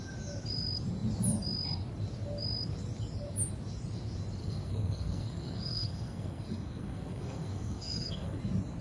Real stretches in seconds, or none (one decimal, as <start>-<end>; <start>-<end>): 0.0-4.4; 8.4-8.8